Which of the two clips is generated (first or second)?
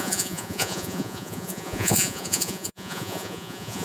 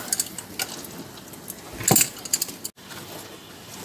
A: first